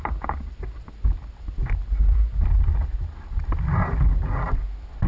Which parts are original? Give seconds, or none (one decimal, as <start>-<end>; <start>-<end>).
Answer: 0.0-5.1